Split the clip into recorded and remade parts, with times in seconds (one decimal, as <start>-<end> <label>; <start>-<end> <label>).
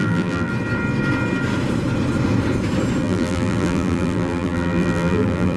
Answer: 0.0-0.5 remade; 0.5-3.0 recorded; 3.0-5.6 remade